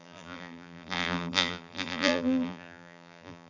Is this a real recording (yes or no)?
no